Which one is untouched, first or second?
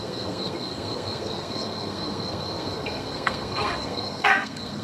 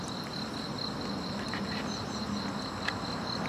second